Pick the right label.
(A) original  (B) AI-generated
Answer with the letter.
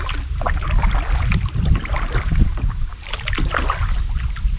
A